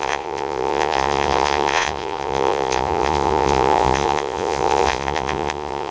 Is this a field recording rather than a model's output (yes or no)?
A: no